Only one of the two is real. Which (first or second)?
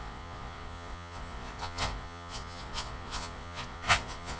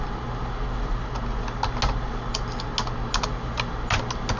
second